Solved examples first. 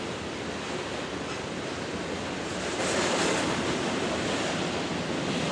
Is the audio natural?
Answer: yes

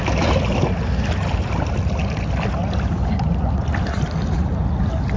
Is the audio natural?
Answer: yes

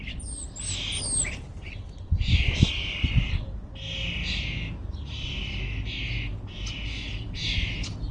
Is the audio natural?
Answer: yes